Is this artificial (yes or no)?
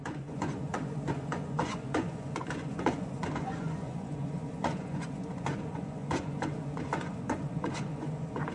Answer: yes